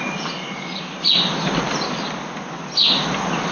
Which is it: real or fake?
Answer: real